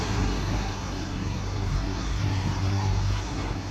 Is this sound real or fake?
fake